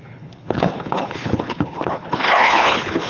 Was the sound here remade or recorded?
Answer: remade